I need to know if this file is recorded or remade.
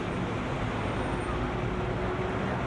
recorded